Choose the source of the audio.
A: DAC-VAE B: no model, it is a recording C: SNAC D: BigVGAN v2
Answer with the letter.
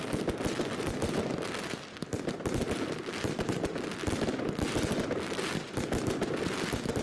B